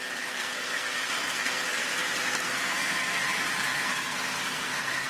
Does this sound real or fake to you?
fake